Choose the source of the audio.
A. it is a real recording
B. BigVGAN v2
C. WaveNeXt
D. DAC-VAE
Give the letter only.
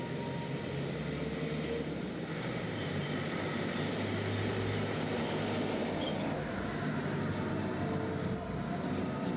A